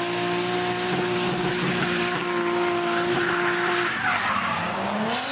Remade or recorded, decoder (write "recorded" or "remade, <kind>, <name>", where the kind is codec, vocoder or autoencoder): recorded